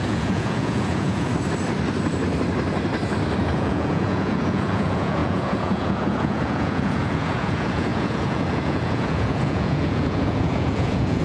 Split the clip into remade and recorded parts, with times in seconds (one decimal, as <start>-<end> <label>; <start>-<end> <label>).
0.0-1.3 remade; 1.3-3.4 recorded; 3.4-11.2 remade